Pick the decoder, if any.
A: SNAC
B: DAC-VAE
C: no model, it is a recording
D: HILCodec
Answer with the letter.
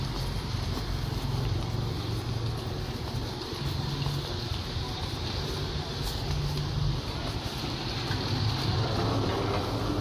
C